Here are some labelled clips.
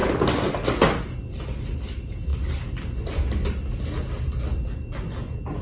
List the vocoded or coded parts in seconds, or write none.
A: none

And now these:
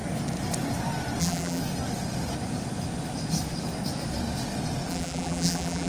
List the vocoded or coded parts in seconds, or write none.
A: 1.2-1.6 (vocoder, BigVGAN v2); 4.9-5.9